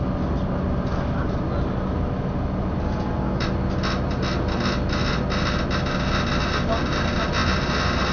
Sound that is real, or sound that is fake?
real